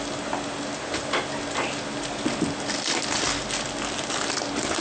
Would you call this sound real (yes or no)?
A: yes